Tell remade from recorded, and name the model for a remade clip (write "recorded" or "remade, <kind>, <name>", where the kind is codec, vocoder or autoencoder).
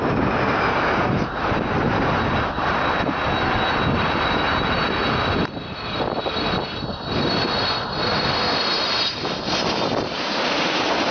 recorded